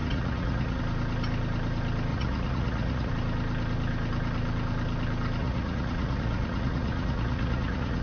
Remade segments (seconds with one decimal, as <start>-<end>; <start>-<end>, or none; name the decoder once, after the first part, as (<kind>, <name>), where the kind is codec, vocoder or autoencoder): 0.0-0.8 (vocoder, Vocos); 2.1-3.1; 5.4-8.0